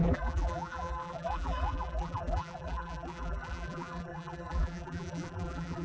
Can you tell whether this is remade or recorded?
remade